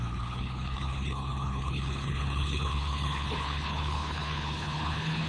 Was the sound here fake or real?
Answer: fake